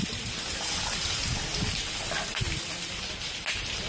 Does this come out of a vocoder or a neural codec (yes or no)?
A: no